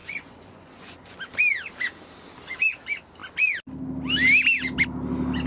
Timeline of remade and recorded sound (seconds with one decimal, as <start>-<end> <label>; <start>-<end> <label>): 0.0-1.2 remade; 1.2-5.5 recorded